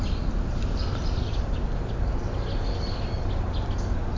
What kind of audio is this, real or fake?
real